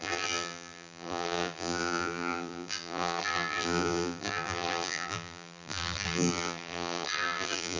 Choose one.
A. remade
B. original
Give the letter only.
A